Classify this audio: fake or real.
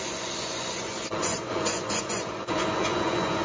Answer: fake